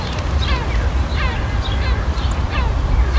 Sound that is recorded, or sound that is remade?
recorded